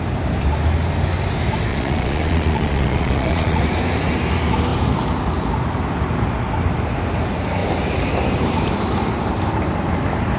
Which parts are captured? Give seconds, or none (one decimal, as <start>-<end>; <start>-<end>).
0.0-1.7; 3.6-10.4